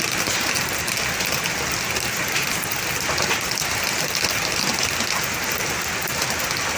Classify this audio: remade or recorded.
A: recorded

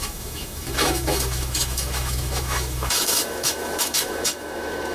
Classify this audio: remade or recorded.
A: remade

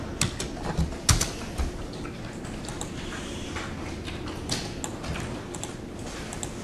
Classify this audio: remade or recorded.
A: recorded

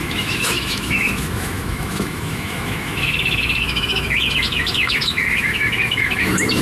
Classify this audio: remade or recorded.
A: remade